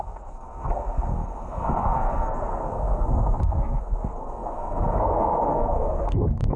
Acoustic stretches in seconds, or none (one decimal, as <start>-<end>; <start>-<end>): none